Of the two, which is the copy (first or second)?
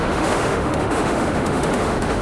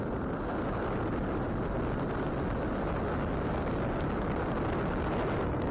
first